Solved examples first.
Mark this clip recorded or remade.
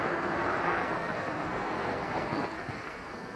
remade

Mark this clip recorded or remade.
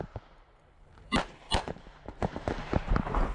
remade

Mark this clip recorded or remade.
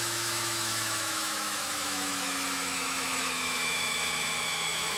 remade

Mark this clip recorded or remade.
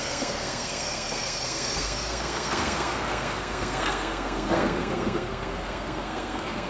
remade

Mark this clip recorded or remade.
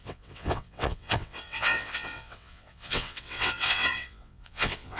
remade